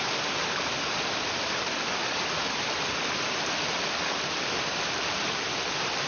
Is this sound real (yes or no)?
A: yes